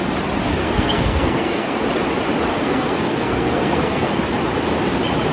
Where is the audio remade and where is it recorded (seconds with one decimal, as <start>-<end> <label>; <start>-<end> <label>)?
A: 0.0-0.6 recorded; 0.6-1.8 remade; 1.8-2.5 recorded; 2.5-4.2 remade; 4.2-5.3 recorded